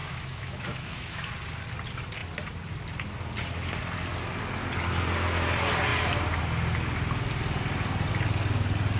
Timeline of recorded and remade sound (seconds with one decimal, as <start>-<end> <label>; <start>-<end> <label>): 0.0-1.3 remade; 1.3-9.0 recorded